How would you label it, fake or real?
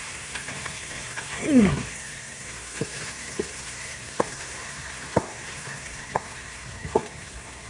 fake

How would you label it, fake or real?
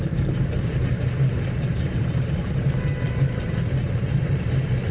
fake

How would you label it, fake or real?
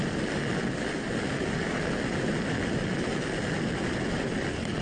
real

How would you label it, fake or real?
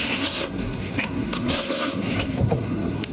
fake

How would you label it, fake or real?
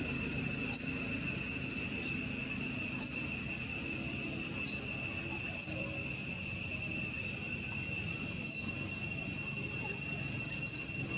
real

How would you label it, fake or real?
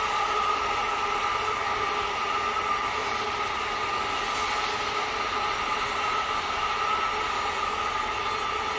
real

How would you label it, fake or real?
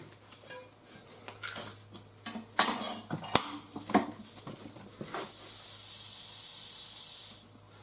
real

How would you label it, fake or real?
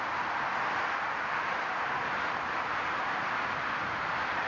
fake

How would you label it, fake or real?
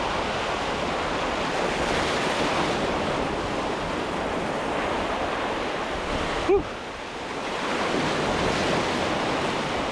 real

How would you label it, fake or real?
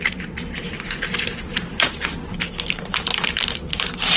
fake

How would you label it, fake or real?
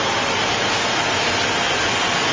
real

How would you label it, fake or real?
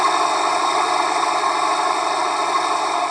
real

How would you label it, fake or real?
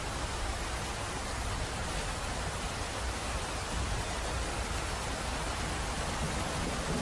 real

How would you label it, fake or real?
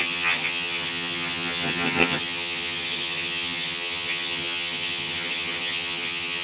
fake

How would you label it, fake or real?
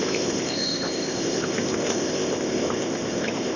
fake